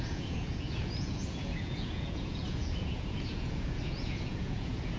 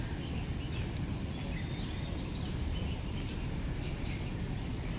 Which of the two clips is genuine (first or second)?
second